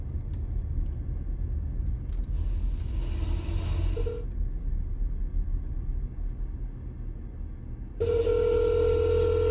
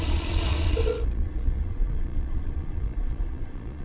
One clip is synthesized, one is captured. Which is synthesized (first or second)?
second